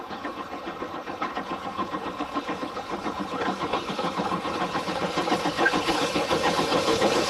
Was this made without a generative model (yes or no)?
no